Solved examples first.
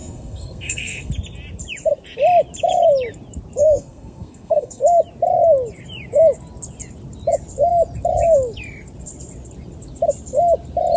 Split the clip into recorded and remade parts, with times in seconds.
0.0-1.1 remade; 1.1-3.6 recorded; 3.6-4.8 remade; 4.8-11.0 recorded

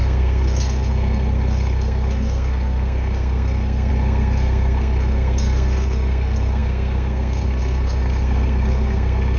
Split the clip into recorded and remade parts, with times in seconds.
0.0-9.4 remade

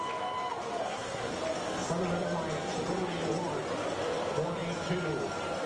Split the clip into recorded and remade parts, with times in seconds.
0.0-0.8 recorded; 0.8-1.3 remade; 1.3-5.7 recorded